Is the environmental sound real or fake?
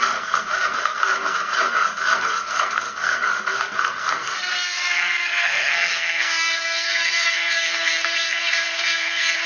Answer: fake